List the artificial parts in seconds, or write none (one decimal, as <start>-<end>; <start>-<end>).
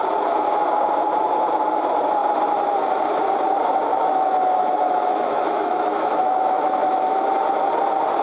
3.9-7.3